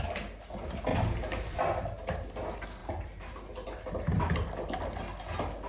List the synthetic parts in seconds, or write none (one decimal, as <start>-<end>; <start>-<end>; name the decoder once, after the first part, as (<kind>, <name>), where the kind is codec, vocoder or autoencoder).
0.9-1.6 (vocoder, BigVGAN v2); 2.8-3.9